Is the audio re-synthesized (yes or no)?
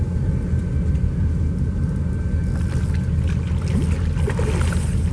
no